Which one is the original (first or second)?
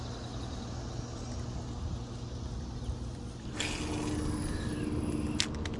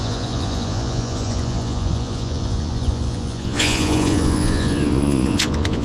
first